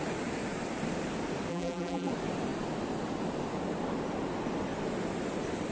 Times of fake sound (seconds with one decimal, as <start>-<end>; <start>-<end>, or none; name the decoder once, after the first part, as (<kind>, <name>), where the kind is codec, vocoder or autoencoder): 1.5-2.1 (vocoder, BigVGAN v2)

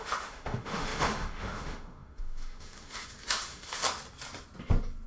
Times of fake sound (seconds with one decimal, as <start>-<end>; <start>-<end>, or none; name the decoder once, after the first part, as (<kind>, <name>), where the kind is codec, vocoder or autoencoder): 0.0-3.8 (autoencoder, DAC-VAE)

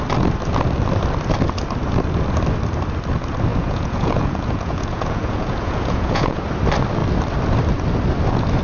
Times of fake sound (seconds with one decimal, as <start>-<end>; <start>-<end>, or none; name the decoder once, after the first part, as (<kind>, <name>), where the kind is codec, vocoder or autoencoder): 3.5-6.4 (vocoder, Vocos)

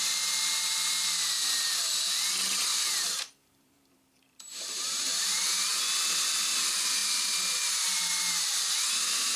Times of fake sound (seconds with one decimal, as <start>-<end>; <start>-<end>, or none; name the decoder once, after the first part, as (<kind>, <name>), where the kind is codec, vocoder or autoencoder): 2.7-5.3 (vocoder, BigVGAN v2); 7.0-8.7

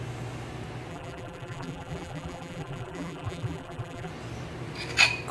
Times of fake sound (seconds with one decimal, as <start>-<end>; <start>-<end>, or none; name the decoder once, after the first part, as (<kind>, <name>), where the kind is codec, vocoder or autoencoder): 0.9-4.1 (vocoder, BigVGAN v2)

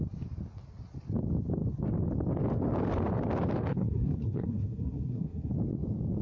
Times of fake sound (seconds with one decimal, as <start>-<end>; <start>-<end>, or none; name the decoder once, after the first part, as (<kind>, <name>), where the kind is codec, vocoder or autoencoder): 3.7-5.5 (codec, SNAC)

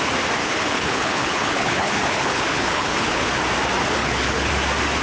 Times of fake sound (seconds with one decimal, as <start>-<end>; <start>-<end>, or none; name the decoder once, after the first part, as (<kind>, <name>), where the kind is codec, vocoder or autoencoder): 0.4-3.4 (codec, HILCodec); 4.0-4.5